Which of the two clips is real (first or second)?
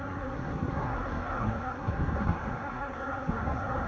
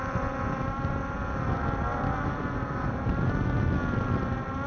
second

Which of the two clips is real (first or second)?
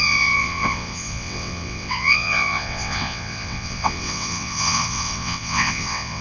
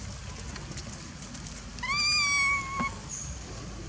second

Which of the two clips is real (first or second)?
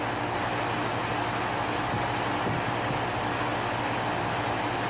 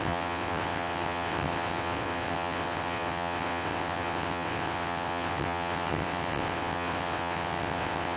first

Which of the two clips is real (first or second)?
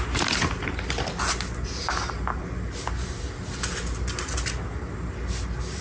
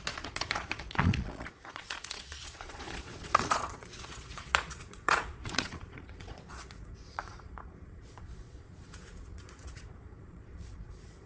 first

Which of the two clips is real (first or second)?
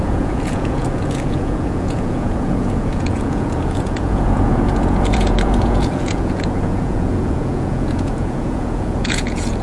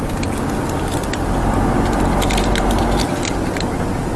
second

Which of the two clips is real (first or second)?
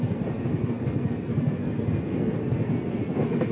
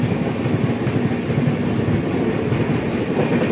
second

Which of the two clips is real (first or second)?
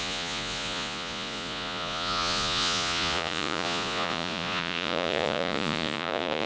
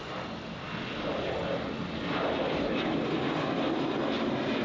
second